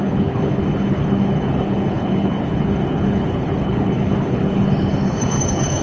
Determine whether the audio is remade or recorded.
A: remade